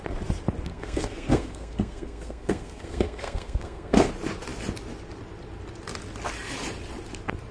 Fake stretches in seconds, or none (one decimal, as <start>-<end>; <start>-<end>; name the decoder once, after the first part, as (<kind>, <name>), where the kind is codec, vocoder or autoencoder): 0.7-4.1 (codec, SNAC)